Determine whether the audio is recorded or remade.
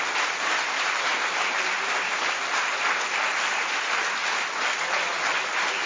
recorded